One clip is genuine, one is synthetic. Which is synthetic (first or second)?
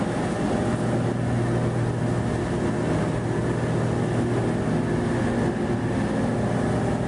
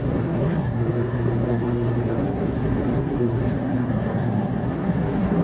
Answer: second